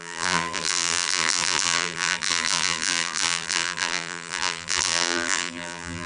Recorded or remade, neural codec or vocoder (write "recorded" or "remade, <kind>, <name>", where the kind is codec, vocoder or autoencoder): remade, vocoder, BigVGAN v2